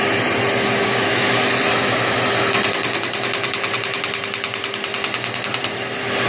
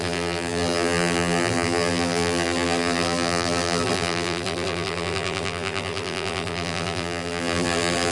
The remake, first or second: second